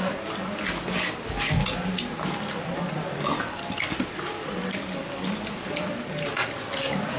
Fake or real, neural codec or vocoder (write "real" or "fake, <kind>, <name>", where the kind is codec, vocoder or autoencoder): real